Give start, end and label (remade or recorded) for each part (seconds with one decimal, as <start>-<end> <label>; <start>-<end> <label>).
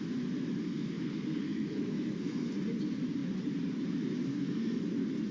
0.0-0.6 recorded; 0.6-2.5 remade; 2.5-4.3 recorded; 4.3-4.8 remade; 4.8-5.3 recorded